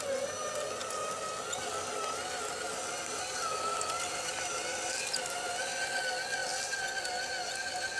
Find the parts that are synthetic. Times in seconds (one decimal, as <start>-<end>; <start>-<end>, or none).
none